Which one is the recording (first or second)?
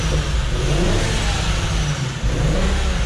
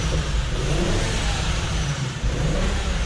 first